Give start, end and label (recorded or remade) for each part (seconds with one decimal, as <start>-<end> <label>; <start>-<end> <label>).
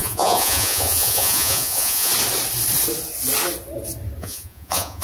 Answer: 0.0-2.1 remade; 2.1-4.2 recorded; 4.2-5.0 remade